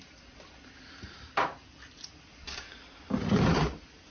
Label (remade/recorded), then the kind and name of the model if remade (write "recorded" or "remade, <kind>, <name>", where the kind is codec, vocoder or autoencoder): recorded